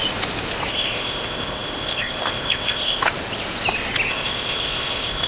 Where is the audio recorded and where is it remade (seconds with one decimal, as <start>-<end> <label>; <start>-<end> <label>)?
0.0-0.7 recorded; 0.7-3.0 remade; 3.0-4.1 recorded; 4.1-5.3 remade